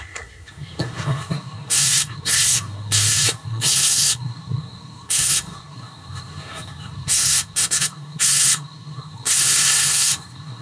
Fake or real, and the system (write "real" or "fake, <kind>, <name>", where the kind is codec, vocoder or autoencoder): fake, codec, SNAC